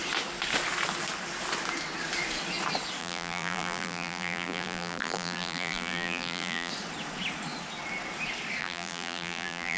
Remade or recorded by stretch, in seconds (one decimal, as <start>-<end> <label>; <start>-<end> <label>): 0.0-3.0 recorded; 3.0-6.7 remade; 6.7-8.6 recorded; 8.6-9.8 remade